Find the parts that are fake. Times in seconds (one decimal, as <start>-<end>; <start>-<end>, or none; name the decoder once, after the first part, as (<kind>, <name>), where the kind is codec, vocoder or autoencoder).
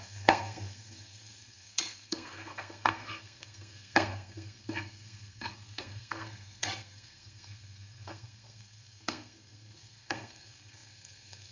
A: 0.0-11.5 (codec, SNAC)